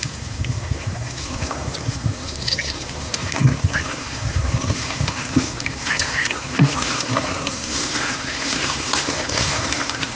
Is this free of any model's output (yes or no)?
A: no